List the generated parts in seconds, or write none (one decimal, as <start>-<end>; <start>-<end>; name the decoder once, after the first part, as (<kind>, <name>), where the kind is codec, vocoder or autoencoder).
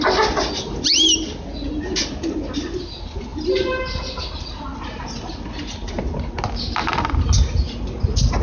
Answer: none